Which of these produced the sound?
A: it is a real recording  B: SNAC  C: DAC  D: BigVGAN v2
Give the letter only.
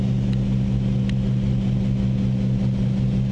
A